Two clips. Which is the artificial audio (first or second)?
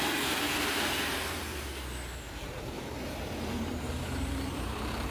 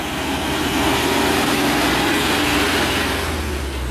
first